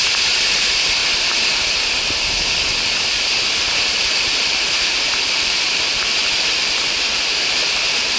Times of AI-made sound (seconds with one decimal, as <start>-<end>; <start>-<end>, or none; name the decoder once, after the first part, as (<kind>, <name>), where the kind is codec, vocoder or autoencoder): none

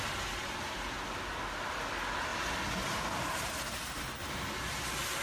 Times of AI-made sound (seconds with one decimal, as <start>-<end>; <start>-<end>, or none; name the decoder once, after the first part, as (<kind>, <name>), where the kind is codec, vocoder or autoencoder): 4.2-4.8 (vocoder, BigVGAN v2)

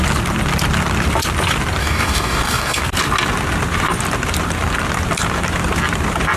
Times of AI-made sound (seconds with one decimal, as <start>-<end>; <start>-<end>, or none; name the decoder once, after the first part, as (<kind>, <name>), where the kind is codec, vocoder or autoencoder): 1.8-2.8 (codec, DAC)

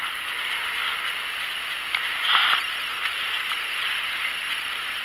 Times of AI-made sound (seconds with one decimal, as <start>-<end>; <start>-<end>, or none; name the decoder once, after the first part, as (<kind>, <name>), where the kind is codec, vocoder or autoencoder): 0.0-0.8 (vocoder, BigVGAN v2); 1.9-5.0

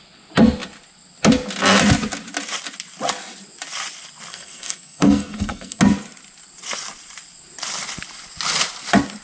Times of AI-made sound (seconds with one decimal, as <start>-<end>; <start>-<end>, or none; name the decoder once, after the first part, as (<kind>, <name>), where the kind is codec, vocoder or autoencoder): 4.3-5.8 (codec, SNAC)